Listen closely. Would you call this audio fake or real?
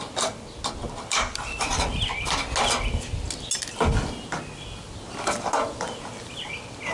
real